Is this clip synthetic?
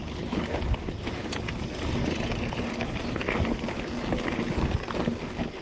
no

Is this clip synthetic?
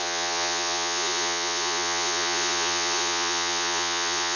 yes